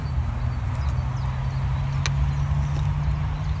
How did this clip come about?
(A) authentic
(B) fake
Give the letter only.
A